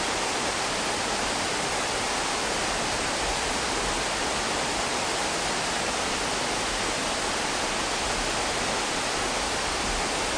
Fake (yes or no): no